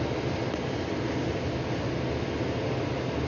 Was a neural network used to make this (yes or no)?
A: no